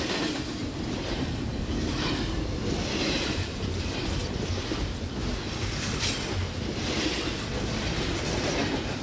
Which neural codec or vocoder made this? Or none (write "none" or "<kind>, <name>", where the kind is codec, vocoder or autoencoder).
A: none